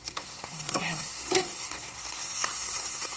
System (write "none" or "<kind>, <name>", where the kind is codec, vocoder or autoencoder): codec, SNAC